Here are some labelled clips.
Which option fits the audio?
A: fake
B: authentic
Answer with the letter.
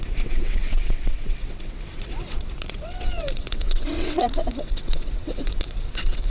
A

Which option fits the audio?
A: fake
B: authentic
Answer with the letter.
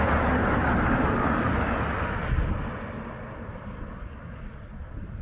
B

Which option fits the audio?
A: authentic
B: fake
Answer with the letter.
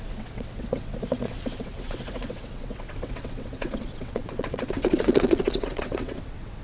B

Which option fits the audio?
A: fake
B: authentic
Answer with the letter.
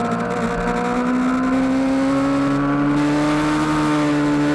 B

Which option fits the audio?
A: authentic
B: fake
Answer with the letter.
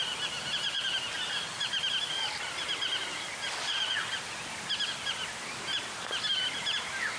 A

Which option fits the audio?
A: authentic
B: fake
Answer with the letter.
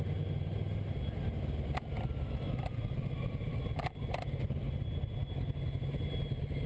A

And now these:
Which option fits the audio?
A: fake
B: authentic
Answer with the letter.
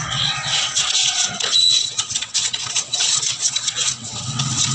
A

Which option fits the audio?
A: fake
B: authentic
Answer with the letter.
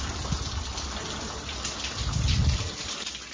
B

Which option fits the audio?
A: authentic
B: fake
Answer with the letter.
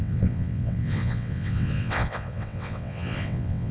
B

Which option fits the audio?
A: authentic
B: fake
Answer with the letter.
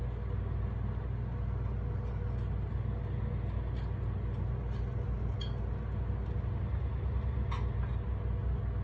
A